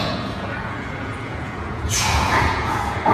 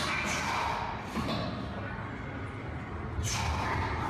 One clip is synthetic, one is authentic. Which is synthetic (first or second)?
first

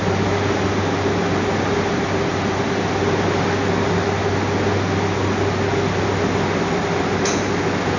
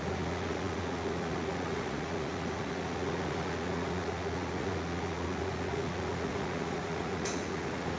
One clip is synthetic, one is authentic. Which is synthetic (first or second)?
second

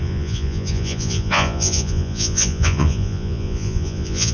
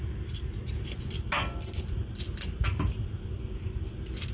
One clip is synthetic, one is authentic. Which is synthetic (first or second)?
first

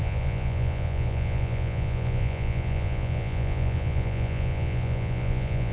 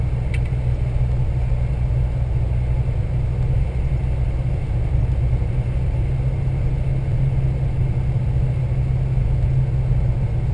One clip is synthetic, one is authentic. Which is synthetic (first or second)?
first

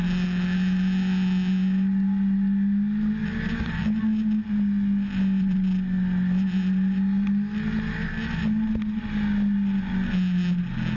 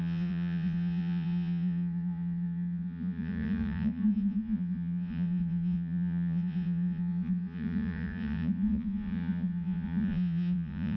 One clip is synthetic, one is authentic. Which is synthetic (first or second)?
second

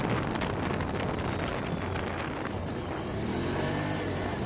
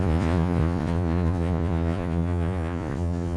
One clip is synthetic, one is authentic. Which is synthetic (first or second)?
second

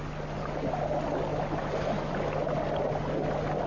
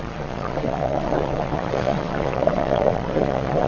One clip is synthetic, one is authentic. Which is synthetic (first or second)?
second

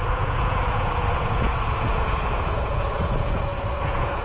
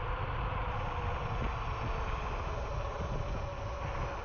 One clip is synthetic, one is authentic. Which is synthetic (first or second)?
first